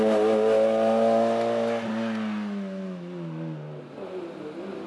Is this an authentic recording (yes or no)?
yes